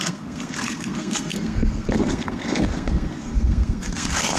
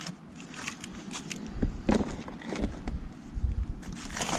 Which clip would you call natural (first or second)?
second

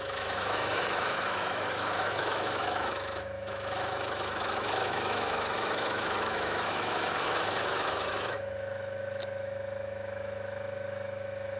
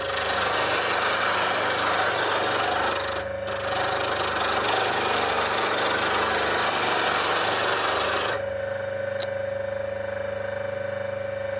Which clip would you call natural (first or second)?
second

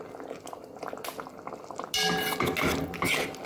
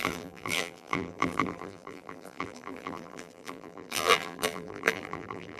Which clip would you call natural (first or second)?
first